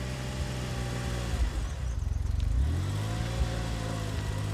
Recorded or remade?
recorded